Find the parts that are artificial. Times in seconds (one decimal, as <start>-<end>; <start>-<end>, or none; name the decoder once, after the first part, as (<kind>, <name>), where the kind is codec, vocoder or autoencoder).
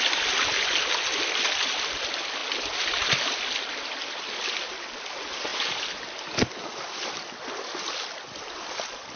none